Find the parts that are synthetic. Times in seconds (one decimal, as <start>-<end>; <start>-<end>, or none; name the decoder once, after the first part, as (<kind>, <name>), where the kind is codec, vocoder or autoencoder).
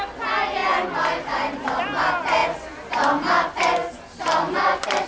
none